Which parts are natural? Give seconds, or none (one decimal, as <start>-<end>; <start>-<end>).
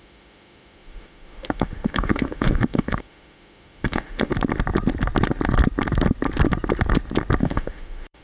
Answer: 4.3-7.4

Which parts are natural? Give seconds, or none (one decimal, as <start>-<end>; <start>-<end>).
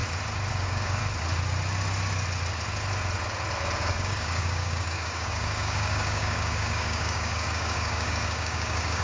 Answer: 0.0-0.5; 1.0-3.8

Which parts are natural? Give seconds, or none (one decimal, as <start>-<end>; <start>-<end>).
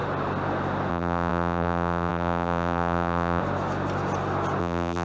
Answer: 0.0-0.9; 3.4-4.6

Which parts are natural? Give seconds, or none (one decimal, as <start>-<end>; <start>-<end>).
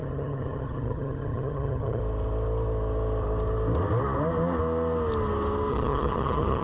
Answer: 2.0-5.7